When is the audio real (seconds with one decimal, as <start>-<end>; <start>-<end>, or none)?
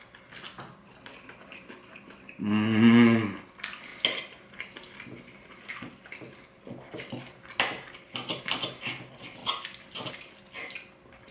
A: 0.0-11.3